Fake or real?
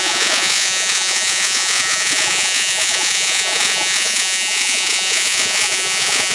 fake